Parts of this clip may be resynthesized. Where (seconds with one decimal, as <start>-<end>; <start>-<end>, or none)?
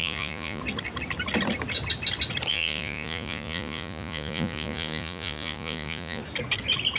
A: 0.0-0.6; 2.5-6.2